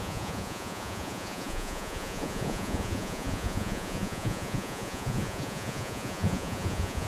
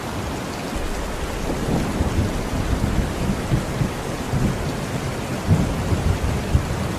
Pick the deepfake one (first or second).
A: first